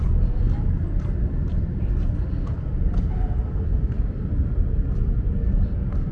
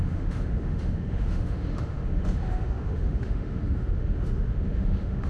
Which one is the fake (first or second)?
second